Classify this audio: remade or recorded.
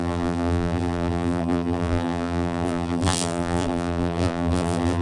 remade